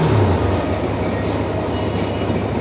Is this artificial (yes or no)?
no